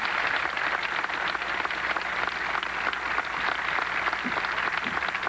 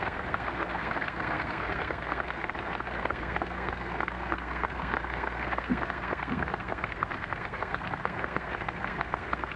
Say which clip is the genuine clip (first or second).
first